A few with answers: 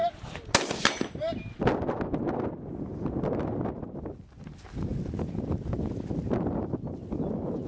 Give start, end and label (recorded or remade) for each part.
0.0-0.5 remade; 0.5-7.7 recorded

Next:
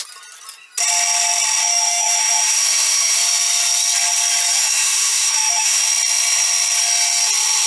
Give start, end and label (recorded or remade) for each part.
0.0-1.6 recorded; 1.6-3.2 remade; 3.2-4.6 recorded; 4.6-5.8 remade; 5.8-7.7 recorded

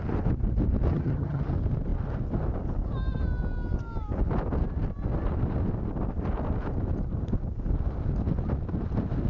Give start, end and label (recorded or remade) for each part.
0.0-0.9 recorded; 0.9-1.4 remade; 1.4-9.3 recorded

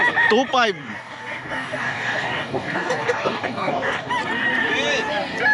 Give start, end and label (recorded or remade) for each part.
0.0-0.8 recorded; 0.8-4.1 remade; 4.1-5.5 recorded